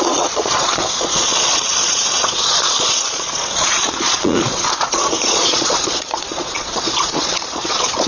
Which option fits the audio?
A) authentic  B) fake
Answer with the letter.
B